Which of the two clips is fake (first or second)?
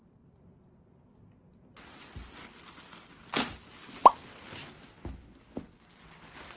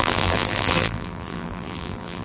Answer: second